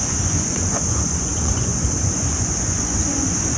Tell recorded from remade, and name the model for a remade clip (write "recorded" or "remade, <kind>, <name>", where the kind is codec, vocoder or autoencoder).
remade, vocoder, Vocos